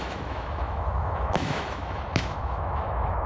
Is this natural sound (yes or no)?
no